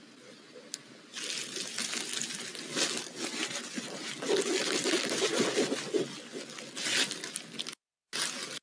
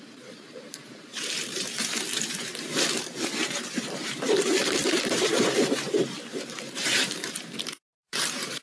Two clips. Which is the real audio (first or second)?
first